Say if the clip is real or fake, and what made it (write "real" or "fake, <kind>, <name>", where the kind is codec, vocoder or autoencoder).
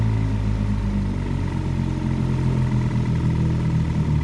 real